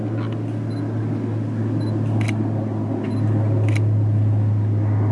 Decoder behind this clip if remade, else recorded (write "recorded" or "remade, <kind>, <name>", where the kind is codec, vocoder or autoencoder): recorded